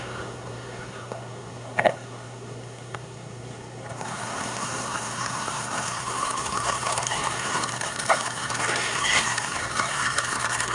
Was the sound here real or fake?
fake